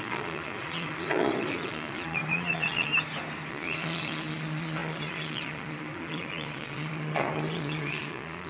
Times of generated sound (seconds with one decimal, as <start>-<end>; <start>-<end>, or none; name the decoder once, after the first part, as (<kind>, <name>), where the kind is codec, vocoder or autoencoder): 0.0-2.9 (vocoder, Vocos); 3.5-8.5

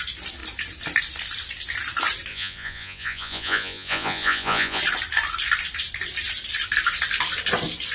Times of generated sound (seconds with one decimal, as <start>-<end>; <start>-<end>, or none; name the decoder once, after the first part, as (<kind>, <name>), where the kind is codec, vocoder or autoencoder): 2.3-4.8 (vocoder, Vocos)

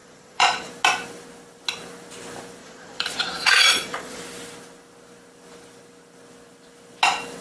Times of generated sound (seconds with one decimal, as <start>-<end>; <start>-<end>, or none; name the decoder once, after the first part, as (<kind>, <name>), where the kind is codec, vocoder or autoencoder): 0.0-0.7 (vocoder, Vocos); 2.6-4.2

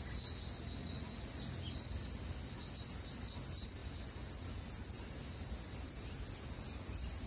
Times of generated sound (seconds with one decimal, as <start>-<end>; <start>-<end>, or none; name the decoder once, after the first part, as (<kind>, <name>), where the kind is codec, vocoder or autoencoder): 0.8-1.4 (vocoder, Vocos)

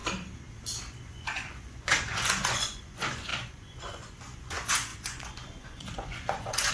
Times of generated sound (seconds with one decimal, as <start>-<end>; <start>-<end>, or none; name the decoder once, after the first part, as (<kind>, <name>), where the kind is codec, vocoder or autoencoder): 1.0-6.7 (vocoder, Vocos)

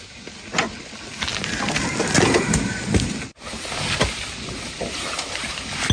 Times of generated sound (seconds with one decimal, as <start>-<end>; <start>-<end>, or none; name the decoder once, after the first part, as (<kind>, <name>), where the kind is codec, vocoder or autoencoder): none

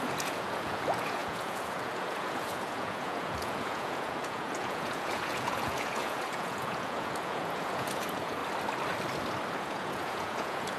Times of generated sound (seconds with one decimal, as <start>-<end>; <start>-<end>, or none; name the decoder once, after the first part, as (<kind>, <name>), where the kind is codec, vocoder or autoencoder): 0.0-8.4 (vocoder, Vocos); 9.5-10.8

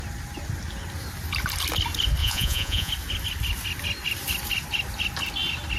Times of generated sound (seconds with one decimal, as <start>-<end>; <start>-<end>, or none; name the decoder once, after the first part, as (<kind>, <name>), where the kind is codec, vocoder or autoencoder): 2.2-2.9 (vocoder, Vocos)